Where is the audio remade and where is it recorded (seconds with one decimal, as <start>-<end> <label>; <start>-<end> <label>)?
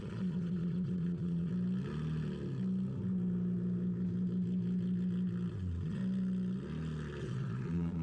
0.0-1.5 remade; 1.5-5.5 recorded; 5.5-6.0 remade; 6.0-7.2 recorded; 7.2-8.0 remade